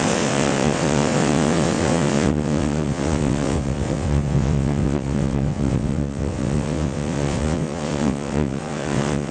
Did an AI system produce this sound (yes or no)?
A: yes